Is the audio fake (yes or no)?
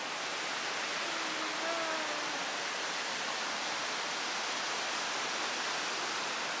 no